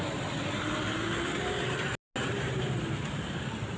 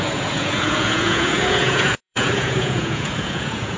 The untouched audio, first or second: first